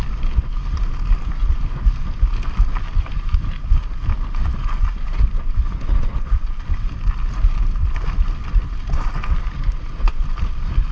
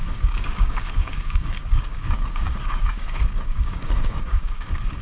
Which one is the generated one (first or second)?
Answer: second